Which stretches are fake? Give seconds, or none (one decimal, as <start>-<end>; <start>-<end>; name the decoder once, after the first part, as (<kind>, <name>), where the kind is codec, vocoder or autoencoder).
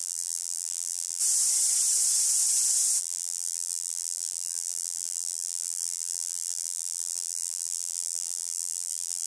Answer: 0.0-1.2 (vocoder, BigVGAN v2); 3.0-9.3